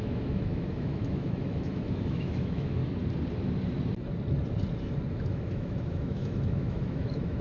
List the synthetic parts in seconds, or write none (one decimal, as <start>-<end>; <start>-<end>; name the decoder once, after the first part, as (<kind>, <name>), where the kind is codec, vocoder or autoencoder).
0.0-2.8 (autoencoder, DAC-VAE); 5.1-7.4